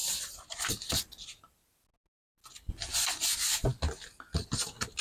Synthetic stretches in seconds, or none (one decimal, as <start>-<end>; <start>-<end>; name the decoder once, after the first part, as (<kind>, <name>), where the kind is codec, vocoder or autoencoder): none